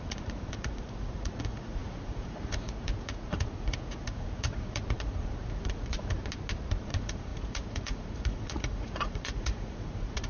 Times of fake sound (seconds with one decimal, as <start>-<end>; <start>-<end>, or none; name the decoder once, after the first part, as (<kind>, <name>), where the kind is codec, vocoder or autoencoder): 0.0-6.2 (vocoder, Vocos); 6.8-10.3